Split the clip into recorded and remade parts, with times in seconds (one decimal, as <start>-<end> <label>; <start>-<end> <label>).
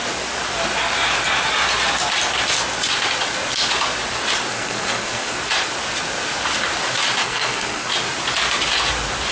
0.0-4.5 recorded; 4.5-5.4 remade; 5.4-7.2 recorded; 7.2-7.9 remade; 7.9-9.3 recorded